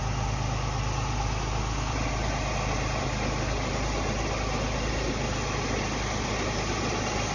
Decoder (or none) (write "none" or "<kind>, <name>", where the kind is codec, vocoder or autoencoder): none